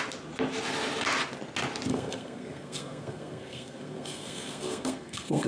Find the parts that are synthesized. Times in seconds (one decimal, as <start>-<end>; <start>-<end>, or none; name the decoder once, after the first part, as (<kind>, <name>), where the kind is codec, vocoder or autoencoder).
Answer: 1.9-5.5 (codec, SNAC)